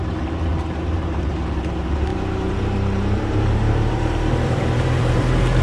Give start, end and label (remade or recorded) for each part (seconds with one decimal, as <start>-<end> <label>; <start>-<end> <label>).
0.0-0.5 recorded; 0.5-1.3 remade; 1.3-2.1 recorded; 2.1-5.6 remade